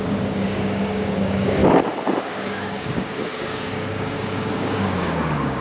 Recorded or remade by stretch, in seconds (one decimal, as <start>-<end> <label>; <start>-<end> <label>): 0.0-1.6 remade; 1.6-2.2 recorded; 2.2-5.6 remade